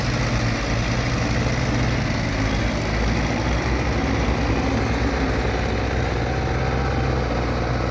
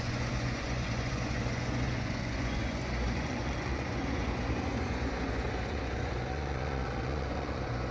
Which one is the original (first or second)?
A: first